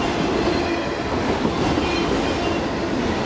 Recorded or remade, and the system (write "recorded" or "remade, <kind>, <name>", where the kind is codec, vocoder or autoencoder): recorded